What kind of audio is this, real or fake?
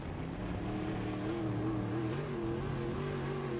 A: real